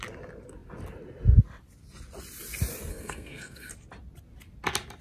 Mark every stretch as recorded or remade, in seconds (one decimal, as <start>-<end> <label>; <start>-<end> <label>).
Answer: 0.0-2.9 recorded; 2.9-3.7 remade; 3.7-5.0 recorded